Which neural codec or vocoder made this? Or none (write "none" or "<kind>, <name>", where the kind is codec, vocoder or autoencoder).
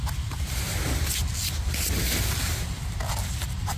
none